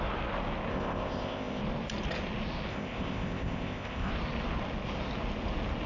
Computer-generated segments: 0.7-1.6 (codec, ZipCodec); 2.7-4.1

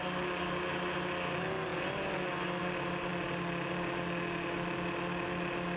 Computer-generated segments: none

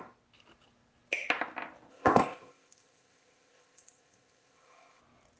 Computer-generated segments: 1.9-5.0 (codec, ZipCodec)